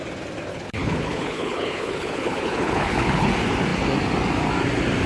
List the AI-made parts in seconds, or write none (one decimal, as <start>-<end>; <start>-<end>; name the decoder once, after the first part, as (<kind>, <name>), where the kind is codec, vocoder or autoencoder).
0.5-3.3 (codec, HILCodec)